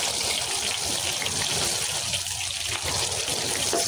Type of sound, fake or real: real